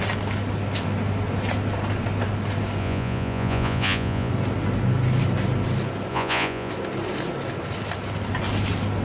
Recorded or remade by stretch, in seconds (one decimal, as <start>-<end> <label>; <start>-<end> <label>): 0.0-2.8 recorded; 2.8-4.3 remade; 4.3-6.1 recorded; 6.1-6.7 remade; 6.7-9.0 recorded